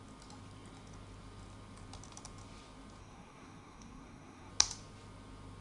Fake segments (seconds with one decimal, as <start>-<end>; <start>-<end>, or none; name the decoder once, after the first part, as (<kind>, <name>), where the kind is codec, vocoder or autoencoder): 3.0-4.5 (codec, SNAC)